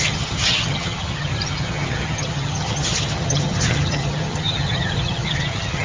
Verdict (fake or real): fake